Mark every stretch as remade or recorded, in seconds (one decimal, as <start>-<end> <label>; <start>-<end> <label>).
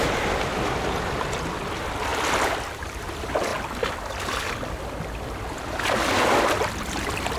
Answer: 0.0-7.4 recorded